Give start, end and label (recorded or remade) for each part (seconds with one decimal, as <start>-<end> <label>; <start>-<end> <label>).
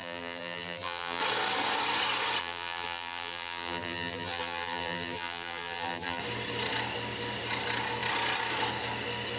0.0-1.2 remade; 1.2-2.4 recorded; 2.4-6.2 remade; 6.2-9.4 recorded